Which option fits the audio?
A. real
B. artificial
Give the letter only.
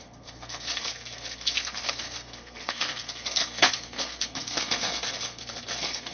B